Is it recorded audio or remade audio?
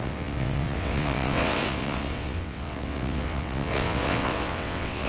remade